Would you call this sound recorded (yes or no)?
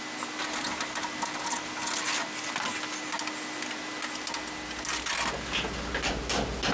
yes